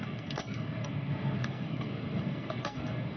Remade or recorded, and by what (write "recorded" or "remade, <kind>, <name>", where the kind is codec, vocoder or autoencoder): remade, codec, SNAC